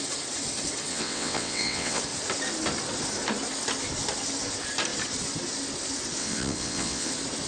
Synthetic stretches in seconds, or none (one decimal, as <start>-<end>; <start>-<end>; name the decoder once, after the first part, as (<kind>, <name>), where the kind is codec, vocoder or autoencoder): 0.9-2.0 (vocoder, WaveNeXt); 6.2-7.1